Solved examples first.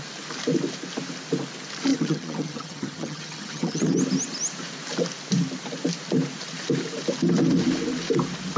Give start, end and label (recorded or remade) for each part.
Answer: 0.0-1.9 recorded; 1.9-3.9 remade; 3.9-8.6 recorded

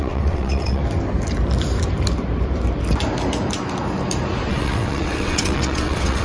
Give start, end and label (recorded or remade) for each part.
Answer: 0.0-0.8 remade; 0.8-4.5 recorded; 4.5-6.2 remade

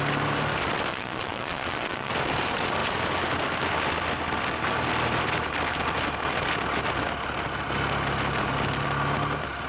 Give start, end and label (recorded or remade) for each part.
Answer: 0.0-0.9 recorded; 0.9-2.1 remade; 2.1-9.7 recorded

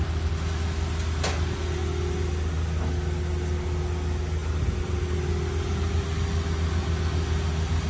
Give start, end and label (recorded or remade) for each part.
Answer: 0.0-7.9 recorded